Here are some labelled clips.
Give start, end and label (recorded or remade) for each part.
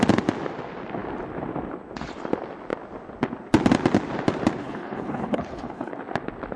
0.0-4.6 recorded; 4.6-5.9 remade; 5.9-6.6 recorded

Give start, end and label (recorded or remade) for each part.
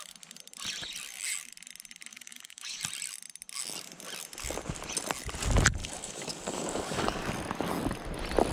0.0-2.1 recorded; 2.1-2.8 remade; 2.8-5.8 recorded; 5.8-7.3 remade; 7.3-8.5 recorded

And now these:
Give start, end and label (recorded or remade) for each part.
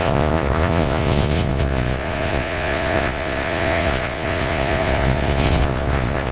0.0-6.3 remade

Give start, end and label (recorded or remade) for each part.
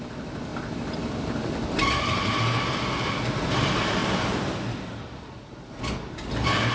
0.0-4.0 recorded; 4.0-4.6 remade; 4.6-6.7 recorded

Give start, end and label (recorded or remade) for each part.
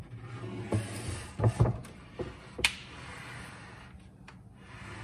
0.0-5.0 recorded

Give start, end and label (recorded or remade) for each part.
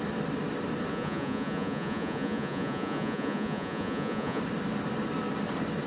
0.0-0.9 recorded; 0.9-4.4 remade; 4.4-5.9 recorded